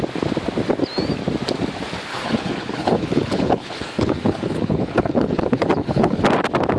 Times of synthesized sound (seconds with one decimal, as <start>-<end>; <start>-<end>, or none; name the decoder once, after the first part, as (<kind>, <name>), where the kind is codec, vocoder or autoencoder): 2.1-6.2 (codec, HILCodec)